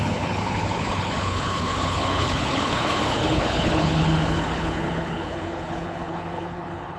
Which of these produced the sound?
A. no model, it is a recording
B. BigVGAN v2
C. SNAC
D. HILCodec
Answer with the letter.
D